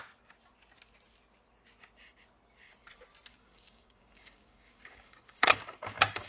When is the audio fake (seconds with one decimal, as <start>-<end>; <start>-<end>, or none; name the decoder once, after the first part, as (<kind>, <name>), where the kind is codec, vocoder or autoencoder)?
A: 3.3-6.3 (codec, DAC)